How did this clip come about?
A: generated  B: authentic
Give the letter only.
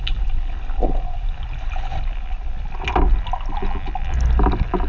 B